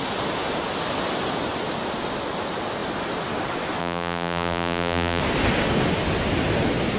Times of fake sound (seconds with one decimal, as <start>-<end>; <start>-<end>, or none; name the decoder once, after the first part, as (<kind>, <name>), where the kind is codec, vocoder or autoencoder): 3.8-5.2 (vocoder, BigVGAN v2)